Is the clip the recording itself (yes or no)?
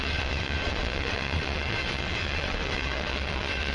no